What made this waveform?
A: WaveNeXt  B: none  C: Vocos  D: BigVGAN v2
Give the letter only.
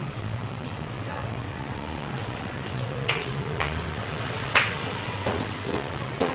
A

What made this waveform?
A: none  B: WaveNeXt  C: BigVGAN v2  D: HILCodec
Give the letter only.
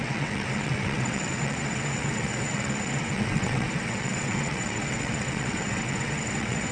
B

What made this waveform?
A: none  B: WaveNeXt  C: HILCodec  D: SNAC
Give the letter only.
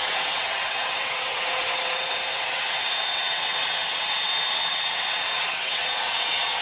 B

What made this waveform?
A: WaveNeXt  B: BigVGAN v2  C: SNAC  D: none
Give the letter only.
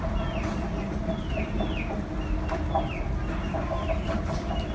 D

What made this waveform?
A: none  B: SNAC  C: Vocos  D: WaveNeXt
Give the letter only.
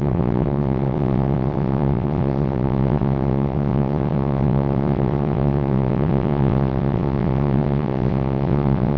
D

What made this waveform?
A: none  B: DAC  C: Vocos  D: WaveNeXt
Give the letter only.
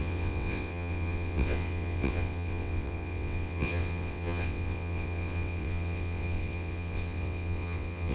D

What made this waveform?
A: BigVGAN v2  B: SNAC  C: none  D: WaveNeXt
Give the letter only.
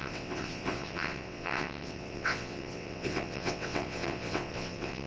D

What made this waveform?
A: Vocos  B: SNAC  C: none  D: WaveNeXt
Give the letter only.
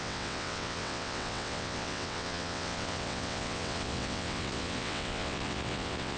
D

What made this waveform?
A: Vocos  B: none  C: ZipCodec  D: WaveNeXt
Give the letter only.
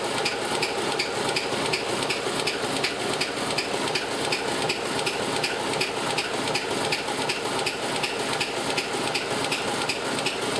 B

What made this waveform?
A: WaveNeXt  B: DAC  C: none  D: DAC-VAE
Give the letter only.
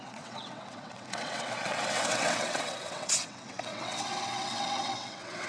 A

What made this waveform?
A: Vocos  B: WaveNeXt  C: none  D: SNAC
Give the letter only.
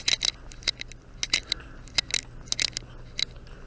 C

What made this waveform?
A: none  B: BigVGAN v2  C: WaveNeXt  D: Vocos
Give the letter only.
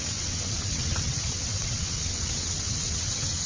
C